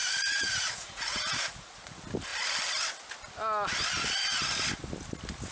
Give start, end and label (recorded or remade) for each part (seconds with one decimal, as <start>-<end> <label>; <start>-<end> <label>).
0.0-1.9 remade; 1.9-5.5 recorded